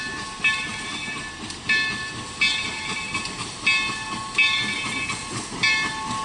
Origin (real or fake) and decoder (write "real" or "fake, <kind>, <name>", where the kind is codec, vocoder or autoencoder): real